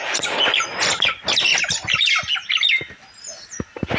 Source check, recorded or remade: recorded